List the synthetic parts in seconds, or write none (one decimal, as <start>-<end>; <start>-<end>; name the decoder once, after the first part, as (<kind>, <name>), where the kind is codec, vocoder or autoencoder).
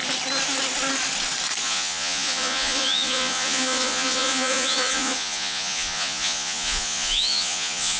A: 1.6-8.0 (vocoder, Vocos)